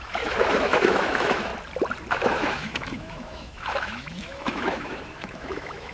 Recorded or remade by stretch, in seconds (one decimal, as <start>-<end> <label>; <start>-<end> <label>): 0.0-1.5 remade; 1.5-2.1 recorded; 2.1-5.9 remade